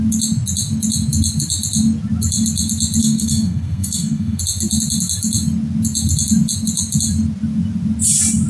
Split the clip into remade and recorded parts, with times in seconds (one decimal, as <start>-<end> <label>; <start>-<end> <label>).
0.0-3.0 recorded; 3.0-4.4 remade; 4.4-8.5 recorded